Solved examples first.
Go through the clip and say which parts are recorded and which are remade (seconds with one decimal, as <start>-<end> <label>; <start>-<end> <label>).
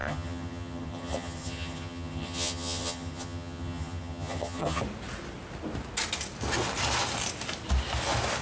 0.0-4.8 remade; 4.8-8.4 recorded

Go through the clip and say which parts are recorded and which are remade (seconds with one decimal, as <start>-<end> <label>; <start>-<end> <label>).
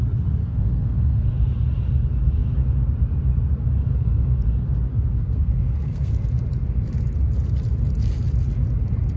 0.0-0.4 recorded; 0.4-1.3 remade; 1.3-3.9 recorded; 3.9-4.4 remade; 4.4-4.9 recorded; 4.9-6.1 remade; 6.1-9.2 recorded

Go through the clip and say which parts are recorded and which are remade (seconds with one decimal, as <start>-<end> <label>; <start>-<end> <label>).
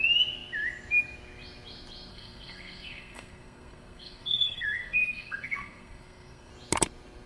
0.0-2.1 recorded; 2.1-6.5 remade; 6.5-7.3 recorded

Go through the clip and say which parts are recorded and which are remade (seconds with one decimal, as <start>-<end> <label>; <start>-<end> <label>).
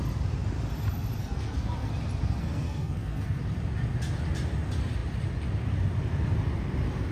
0.0-1.2 recorded; 1.2-1.9 remade; 1.9-2.4 recorded; 2.4-3.4 remade; 3.4-7.1 recorded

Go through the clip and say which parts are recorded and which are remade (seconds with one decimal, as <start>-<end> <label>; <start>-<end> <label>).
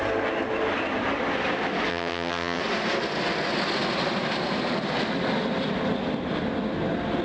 0.0-1.9 recorded; 1.9-2.6 remade; 2.6-7.2 recorded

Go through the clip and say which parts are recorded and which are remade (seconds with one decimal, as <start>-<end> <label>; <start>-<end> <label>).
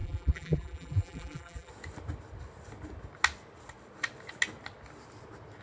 0.0-1.7 remade; 1.7-5.6 recorded